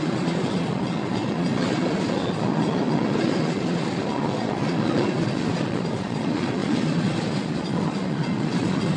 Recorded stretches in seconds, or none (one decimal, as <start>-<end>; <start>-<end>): none